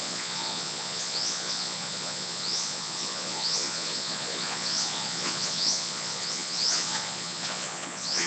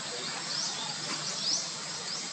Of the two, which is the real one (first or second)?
second